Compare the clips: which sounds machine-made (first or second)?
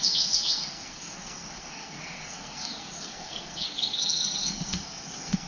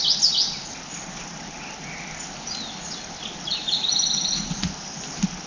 first